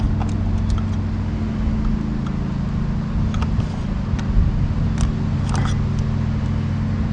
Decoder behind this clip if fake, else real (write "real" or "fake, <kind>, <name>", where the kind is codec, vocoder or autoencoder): real